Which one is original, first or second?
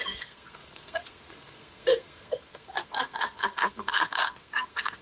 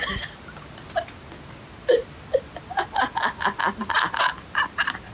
second